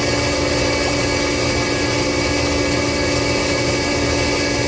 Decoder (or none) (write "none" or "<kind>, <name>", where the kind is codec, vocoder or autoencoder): none